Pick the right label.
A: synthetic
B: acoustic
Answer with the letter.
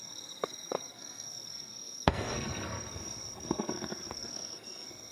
A